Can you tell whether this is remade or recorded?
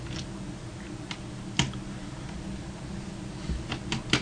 recorded